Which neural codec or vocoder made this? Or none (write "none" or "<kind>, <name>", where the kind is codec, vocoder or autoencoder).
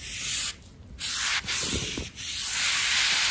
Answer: none